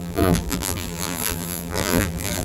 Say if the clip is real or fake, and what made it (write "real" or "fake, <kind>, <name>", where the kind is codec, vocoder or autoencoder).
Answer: fake, vocoder, BigVGAN v2